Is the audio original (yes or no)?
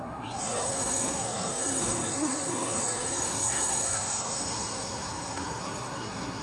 no